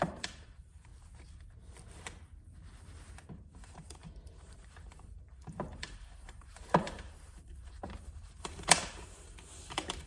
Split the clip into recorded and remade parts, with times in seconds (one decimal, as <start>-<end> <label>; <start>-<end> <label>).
0.0-0.9 remade; 0.9-3.3 recorded; 3.3-10.1 remade